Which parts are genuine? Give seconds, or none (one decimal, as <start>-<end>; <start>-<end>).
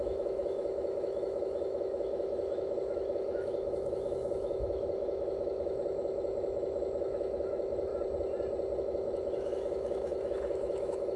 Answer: 7.9-8.8